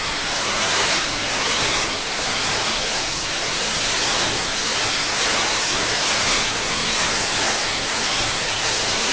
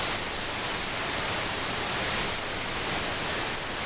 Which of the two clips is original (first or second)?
second